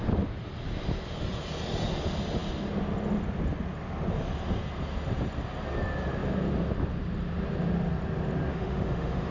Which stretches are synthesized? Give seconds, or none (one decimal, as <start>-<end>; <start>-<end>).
8.5-9.3